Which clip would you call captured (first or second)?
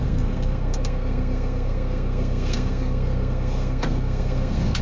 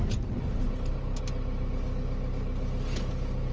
second